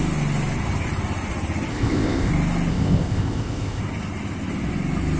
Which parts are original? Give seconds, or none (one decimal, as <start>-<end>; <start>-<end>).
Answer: 0.0-1.7; 2.3-2.7; 3.8-5.2